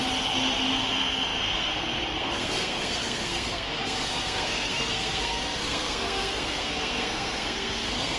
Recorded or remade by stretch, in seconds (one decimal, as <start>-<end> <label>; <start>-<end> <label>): 0.0-0.8 recorded; 0.8-8.2 remade